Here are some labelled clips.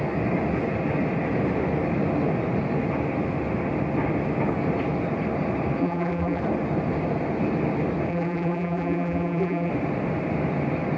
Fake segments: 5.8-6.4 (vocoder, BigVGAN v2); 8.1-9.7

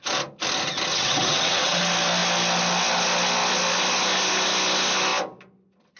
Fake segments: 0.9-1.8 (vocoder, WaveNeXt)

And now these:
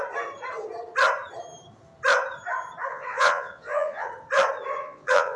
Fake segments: 2.9-4.1 (vocoder, Vocos); 4.8-5.4

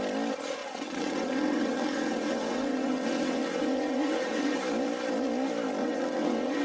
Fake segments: 0.6-4.6 (vocoder, WaveNeXt); 5.8-6.6

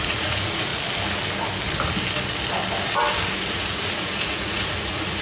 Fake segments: 0.0-0.7 (vocoder, Vocos); 3.5-5.2

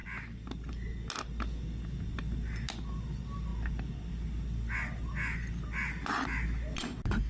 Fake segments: none